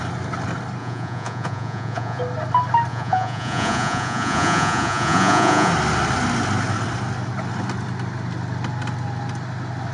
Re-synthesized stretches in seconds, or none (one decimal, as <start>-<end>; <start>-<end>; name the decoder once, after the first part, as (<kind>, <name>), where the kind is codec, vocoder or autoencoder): 0.8-2.2 (vocoder, Vocos); 2.9-5.7